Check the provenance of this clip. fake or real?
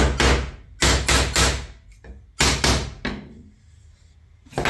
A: real